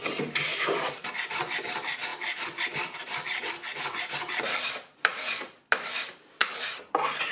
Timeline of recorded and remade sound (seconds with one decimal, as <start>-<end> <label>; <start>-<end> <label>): 0.0-0.5 recorded; 0.5-1.1 remade; 1.1-2.1 recorded; 2.1-4.7 remade; 4.7-6.4 recorded; 6.4-7.3 remade